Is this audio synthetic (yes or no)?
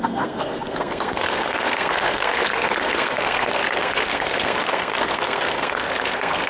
yes